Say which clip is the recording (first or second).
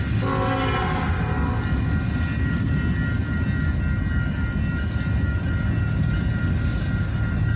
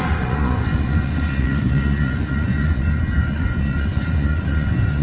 first